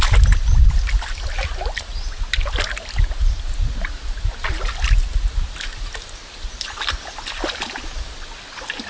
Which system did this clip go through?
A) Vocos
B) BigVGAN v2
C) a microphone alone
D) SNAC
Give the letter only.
C